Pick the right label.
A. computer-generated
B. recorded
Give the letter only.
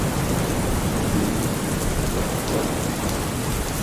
B